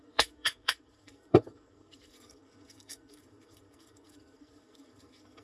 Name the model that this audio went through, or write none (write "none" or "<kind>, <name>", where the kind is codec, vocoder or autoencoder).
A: codec, SNAC